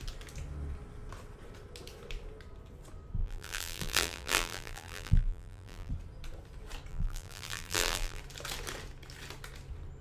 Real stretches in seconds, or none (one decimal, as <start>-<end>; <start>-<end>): 0.0-3.2; 5.9-6.9; 8.2-10.0